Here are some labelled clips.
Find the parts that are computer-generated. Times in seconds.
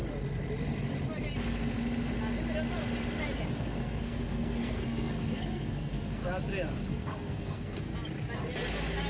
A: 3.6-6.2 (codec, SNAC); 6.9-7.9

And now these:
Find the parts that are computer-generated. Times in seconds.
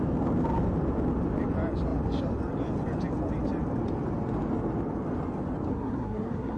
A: 5.7-6.6 (codec, SNAC)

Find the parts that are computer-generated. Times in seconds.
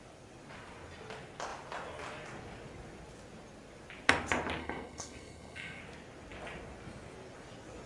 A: 4.6-5.8 (codec, SNAC)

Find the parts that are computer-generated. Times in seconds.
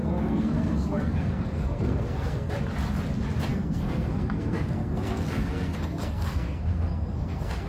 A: 0.0-2.5 (codec, SNAC); 3.5-7.7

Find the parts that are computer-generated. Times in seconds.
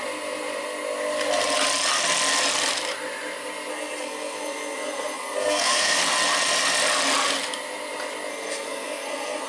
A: 3.7-6.0 (codec, SNAC); 8.3-9.5